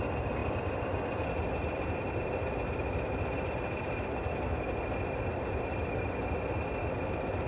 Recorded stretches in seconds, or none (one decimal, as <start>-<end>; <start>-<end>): 0.0-7.5

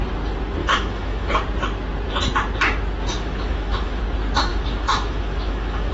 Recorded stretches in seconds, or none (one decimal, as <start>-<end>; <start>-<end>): 0.0-0.6; 1.3-3.1; 4.0-4.5

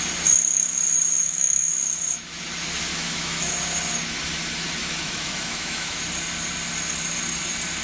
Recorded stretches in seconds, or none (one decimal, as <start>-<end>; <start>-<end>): 0.0-1.2; 1.7-2.9; 3.5-4.8; 6.0-7.8